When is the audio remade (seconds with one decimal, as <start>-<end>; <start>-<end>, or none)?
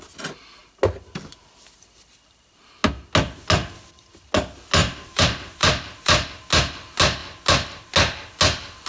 4.8-6.3